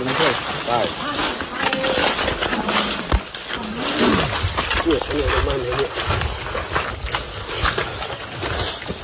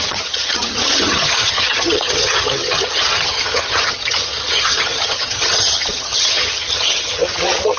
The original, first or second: first